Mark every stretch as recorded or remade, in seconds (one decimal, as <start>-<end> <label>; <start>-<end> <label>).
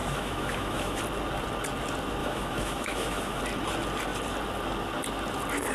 0.0-1.0 remade; 1.0-2.2 recorded; 2.2-3.4 remade; 3.4-5.7 recorded